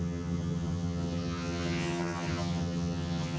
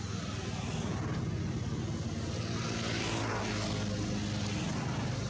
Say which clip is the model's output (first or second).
first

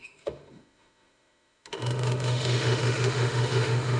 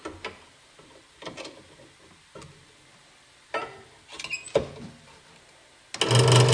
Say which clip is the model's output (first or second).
first